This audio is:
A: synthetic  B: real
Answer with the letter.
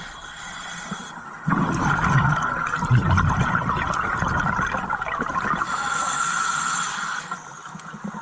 B